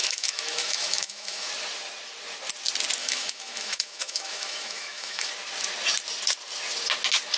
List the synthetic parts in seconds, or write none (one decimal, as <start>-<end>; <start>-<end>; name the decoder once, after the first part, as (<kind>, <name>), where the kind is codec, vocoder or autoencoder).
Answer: 0.0-1.5 (autoencoder, DAC-VAE); 3.0-5.3

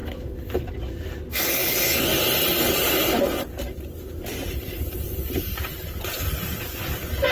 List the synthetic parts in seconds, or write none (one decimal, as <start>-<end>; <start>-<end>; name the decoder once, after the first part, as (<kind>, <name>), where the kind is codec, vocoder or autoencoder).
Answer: 0.0-0.6 (autoencoder, DAC-VAE)

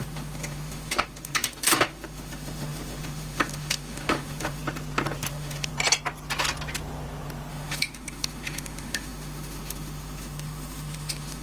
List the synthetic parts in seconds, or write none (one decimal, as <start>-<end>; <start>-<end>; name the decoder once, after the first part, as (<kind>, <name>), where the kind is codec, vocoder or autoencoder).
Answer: 0.0-4.6 (autoencoder, DAC-VAE); 5.3-5.7; 7.5-11.4

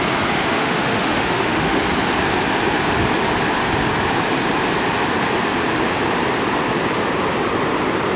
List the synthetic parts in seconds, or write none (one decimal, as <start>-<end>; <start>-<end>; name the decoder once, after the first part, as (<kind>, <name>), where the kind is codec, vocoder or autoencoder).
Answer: 0.4-1.8 (autoencoder, DAC-VAE)